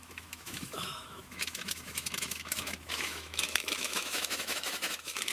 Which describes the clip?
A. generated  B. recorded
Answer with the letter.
A